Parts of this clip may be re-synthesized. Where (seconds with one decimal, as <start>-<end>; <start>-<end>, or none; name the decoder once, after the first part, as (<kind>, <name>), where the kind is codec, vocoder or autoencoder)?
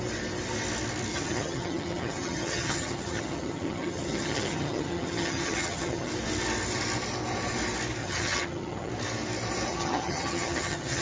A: 1.1-6.1 (vocoder, HiFi-GAN); 8.0-8.9; 9.7-11.0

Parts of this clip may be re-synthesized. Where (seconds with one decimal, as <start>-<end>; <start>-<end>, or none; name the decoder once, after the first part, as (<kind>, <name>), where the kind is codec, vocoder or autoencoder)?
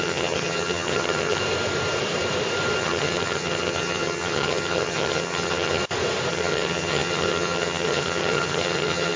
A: 0.0-1.4 (vocoder, HiFi-GAN); 2.8-5.8; 6.3-9.2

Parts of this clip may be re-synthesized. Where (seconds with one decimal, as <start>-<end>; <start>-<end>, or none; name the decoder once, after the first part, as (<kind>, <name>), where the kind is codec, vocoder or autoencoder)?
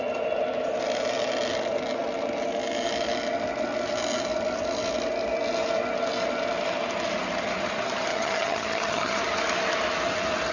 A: 8.1-9.2 (vocoder, HiFi-GAN)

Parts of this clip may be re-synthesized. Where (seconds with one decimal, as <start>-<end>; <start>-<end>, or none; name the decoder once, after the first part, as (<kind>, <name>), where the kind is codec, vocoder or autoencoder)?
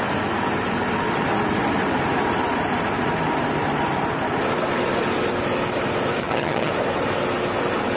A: 6.2-6.7 (vocoder, HiFi-GAN)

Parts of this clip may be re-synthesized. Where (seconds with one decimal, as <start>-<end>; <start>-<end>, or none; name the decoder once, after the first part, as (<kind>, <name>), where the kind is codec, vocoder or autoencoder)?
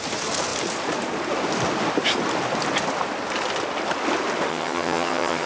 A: 4.5-5.5 (vocoder, HiFi-GAN)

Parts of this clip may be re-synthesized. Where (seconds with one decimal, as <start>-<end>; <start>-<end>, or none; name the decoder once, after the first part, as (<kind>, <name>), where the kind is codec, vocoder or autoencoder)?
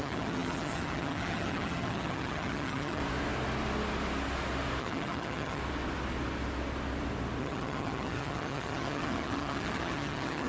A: 0.0-3.0 (vocoder, HiFi-GAN); 4.8-5.6; 7.4-10.5